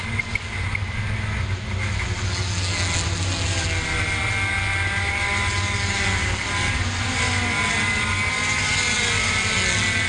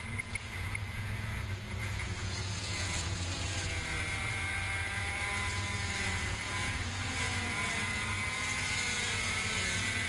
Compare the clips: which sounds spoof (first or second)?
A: second